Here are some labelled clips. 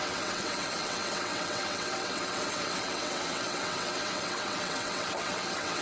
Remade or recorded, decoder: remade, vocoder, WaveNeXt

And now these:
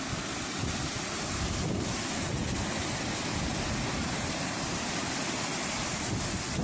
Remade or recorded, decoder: recorded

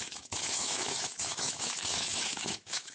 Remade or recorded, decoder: remade, autoencoder, DAC-VAE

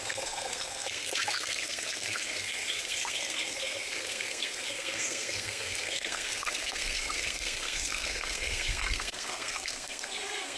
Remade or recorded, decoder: remade, codec, SNAC